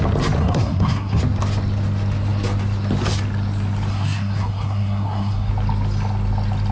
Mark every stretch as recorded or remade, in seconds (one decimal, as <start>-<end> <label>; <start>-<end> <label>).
0.0-0.4 recorded; 0.4-1.2 remade; 1.2-3.9 recorded; 3.9-5.5 remade; 5.5-6.7 recorded